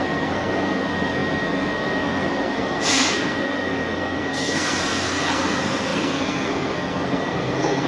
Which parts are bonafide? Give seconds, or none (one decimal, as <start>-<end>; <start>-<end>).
none